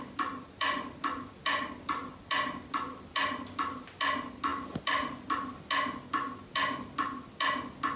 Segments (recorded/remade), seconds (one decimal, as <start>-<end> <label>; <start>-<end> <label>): 0.0-8.0 recorded